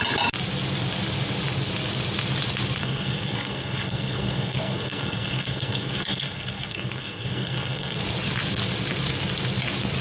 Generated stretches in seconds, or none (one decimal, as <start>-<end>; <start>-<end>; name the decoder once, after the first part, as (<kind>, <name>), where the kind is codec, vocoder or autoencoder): 2.8-8.0 (codec, SNAC)